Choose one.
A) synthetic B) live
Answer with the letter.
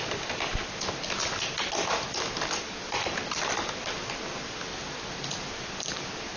B